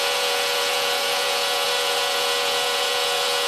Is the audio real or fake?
fake